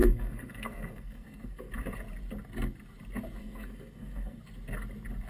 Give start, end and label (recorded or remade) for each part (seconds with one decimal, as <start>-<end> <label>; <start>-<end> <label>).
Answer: 0.0-1.7 remade; 1.7-3.4 recorded; 3.4-4.4 remade; 4.4-5.3 recorded